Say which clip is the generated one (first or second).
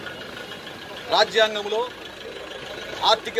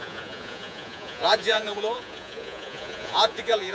second